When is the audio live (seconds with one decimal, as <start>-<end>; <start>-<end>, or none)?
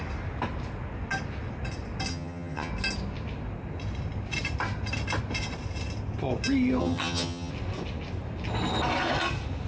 0.0-2.1; 2.7-6.8; 7.5-9.7